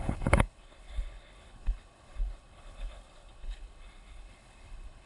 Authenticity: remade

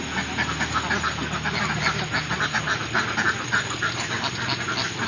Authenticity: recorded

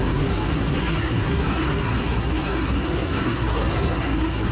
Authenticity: remade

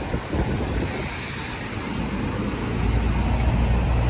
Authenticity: recorded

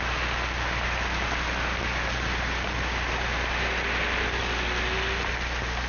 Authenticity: recorded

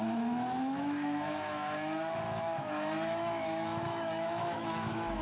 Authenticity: remade